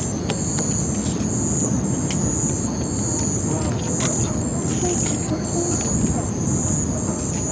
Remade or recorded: recorded